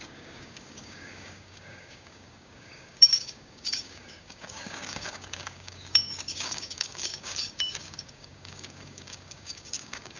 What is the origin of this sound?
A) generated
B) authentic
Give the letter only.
A